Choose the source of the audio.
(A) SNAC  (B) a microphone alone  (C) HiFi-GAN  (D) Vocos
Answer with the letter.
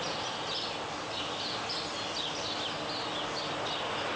B